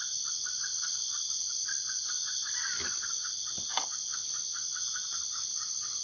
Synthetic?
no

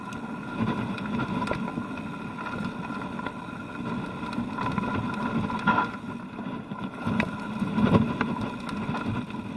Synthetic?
no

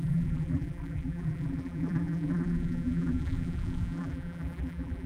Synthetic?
yes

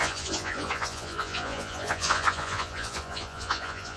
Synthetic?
yes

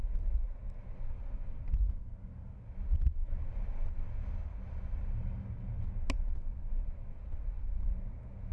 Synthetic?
no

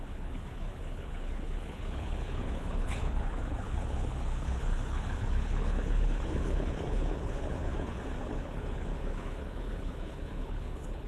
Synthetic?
yes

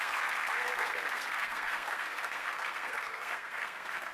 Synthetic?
yes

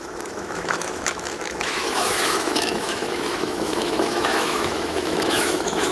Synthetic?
yes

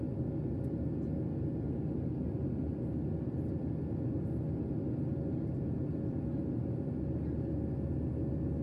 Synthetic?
no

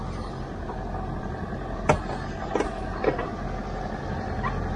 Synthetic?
no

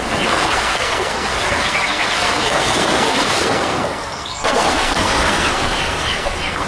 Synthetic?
yes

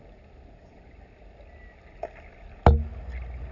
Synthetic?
no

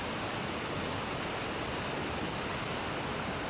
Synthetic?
no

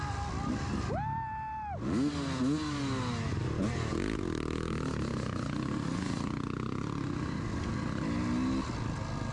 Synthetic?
no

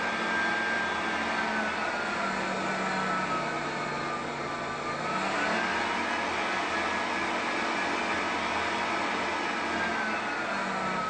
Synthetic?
no